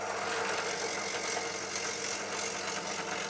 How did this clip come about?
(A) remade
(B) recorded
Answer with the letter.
B